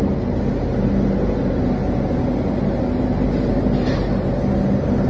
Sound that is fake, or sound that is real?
real